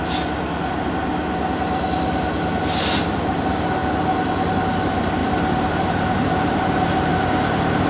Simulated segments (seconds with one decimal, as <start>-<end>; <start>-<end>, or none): 5.2-7.1